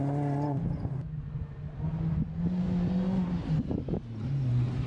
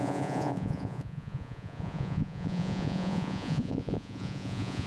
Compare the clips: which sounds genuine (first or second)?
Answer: first